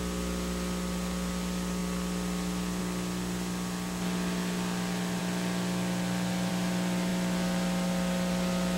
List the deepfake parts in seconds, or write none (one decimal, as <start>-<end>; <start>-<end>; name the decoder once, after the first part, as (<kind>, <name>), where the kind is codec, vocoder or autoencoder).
none